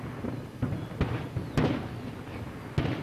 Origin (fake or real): real